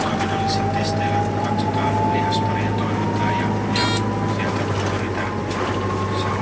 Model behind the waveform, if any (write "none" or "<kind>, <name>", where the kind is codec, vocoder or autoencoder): none